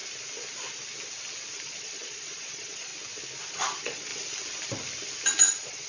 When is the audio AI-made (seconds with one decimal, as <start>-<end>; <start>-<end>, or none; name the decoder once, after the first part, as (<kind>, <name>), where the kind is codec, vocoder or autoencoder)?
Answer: 1.6-2.9 (vocoder, Vocos); 3.5-4.1; 5.4-5.9